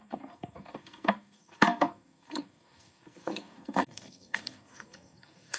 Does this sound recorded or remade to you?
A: remade